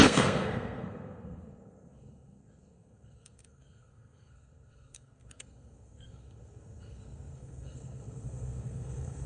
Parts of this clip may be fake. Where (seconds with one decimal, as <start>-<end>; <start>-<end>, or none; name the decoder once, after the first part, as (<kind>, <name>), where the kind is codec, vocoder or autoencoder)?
0.0-9.3 (codec, SNAC)